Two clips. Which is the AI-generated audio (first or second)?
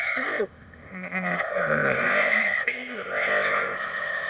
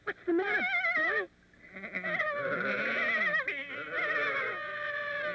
first